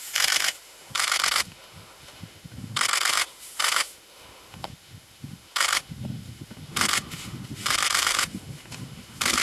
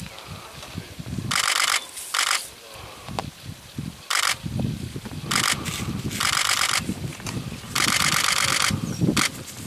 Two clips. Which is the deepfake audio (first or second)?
first